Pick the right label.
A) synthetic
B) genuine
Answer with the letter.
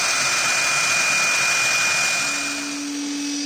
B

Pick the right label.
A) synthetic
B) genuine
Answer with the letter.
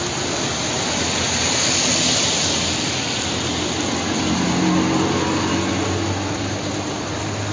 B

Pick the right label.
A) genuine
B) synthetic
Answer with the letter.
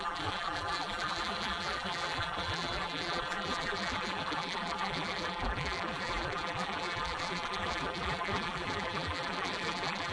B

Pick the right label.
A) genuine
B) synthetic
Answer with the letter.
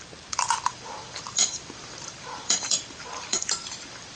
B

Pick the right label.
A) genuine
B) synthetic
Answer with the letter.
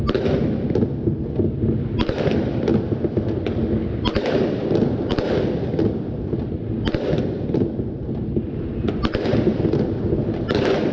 A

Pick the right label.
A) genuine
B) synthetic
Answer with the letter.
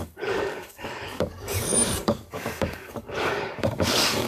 B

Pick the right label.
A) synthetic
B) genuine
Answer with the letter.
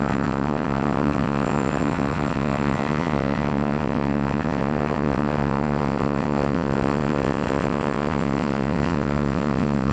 A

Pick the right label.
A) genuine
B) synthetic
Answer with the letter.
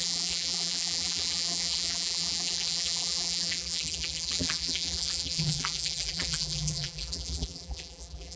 B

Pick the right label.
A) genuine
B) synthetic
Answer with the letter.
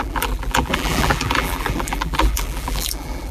B